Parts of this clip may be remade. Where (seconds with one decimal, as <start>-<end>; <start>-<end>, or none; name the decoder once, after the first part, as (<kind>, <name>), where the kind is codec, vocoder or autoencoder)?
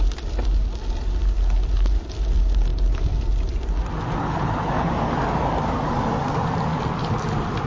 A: 4.2-4.9 (codec, HILCodec)